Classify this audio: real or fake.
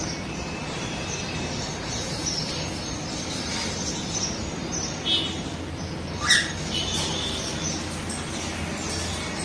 real